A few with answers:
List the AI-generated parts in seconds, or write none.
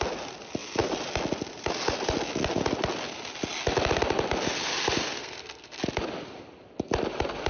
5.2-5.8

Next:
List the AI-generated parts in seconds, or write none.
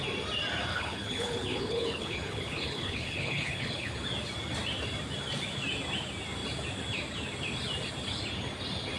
0.7-3.9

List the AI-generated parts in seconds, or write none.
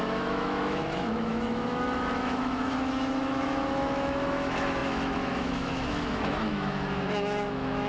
0.0-7.9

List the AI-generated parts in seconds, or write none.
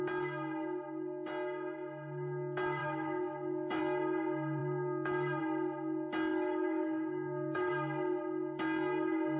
2.8-3.8; 6.3-7.7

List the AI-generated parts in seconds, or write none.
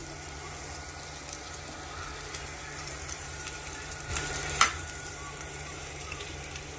2.8-6.8